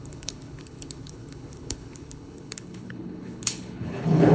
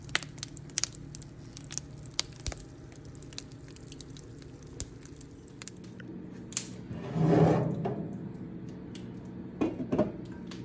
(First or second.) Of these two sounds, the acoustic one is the second